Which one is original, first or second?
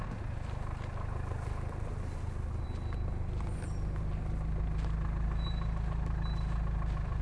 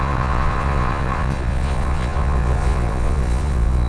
first